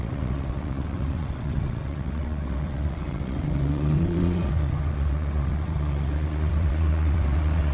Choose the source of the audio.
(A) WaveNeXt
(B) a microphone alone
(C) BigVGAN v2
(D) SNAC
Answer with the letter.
A